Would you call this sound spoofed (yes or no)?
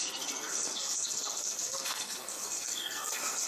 yes